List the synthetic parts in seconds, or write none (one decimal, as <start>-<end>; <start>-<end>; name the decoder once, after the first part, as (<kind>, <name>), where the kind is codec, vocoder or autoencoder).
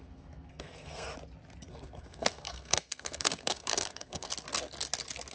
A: 0.0-1.1 (codec, SNAC); 1.7-4.3